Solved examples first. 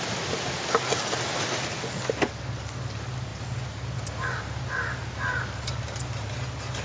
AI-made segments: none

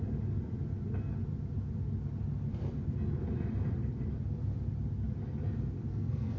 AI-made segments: 5.9-6.4 (codec, SNAC)

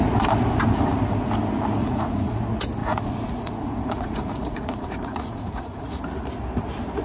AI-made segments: 1.8-2.4 (vocoder, Vocos); 2.8-6.0

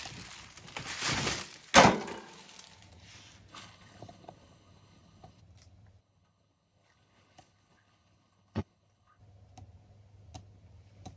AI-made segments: 3.5-5.4 (codec, HILCodec); 6.0-9.2

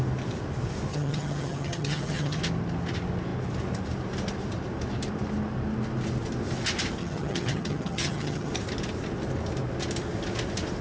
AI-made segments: 0.9-2.4 (vocoder, HiFi-GAN); 7.0-8.5

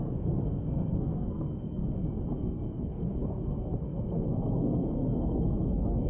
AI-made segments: 0.0-1.8 (codec, SNAC); 2.4-6.1

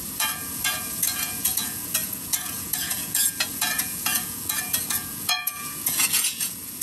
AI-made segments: 0.0-6.8 (vocoder, Vocos)